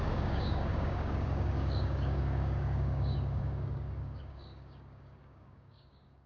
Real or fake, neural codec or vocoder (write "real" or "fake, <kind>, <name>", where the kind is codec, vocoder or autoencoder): fake, codec, DAC